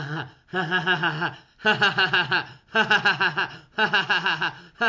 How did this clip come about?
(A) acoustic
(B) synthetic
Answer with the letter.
A